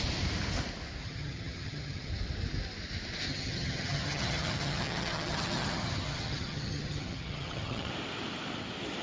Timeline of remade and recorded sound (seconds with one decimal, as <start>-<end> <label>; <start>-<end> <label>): 0.0-1.0 recorded; 1.0-2.1 remade; 2.1-3.3 recorded; 3.3-7.9 remade; 7.9-9.0 recorded